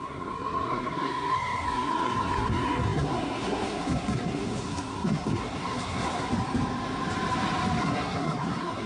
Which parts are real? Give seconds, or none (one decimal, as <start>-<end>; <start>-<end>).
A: 6.3-7.8